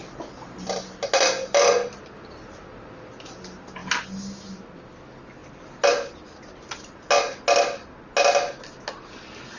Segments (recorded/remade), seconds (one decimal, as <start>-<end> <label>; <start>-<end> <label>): 0.0-9.6 recorded